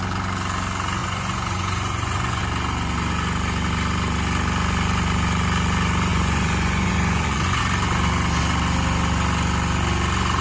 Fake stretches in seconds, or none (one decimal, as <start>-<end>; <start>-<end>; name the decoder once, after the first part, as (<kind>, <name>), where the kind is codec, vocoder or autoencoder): 1.0-2.4 (vocoder, Vocos); 6.1-7.6